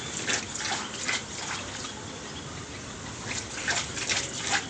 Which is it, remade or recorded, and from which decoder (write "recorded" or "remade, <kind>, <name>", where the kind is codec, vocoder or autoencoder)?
recorded